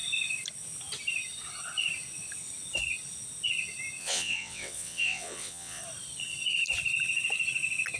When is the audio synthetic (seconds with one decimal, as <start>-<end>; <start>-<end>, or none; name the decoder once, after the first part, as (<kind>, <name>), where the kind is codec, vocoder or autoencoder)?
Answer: 4.0-5.8 (vocoder, WaveNeXt)